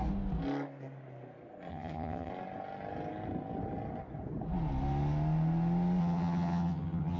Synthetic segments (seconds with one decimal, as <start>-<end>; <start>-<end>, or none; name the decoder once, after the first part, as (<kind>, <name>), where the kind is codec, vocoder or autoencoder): 1.7-2.3 (vocoder, HiFi-GAN); 6.0-7.2